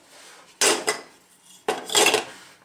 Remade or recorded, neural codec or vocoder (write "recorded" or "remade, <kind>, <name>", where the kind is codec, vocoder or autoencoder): recorded